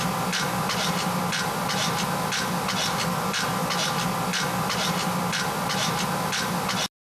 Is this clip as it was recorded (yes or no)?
yes